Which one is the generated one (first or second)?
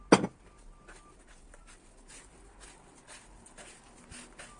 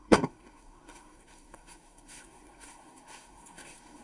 second